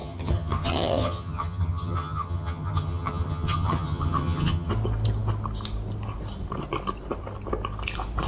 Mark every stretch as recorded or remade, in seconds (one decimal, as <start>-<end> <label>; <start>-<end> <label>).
0.0-4.7 remade; 4.7-8.3 recorded

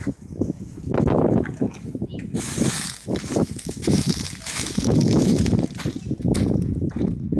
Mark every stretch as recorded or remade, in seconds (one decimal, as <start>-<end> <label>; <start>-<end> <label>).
0.0-5.5 remade; 5.5-7.4 recorded